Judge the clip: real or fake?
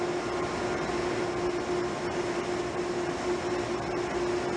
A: real